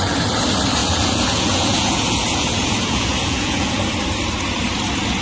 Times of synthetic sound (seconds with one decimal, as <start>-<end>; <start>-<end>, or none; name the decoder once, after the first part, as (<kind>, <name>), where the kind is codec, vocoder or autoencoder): 0.8-3.9 (vocoder, Vocos)